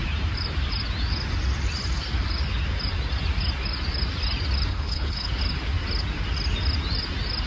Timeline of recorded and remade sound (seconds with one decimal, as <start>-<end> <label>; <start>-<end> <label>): 0.0-4.7 recorded; 4.7-5.3 remade; 5.3-7.5 recorded